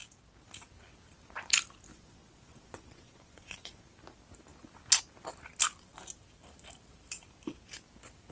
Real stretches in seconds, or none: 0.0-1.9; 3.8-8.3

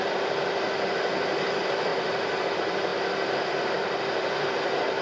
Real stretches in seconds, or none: 0.0-1.9; 2.5-5.0

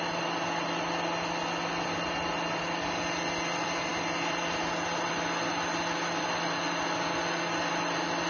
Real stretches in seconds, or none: 0.0-8.3

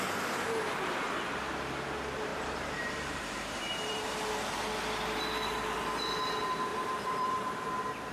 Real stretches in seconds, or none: 0.0-2.3; 4.3-6.7; 7.5-8.1

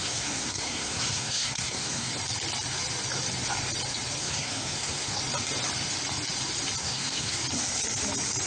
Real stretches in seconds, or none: 2.1-4.2; 5.2-6.8; 7.4-8.5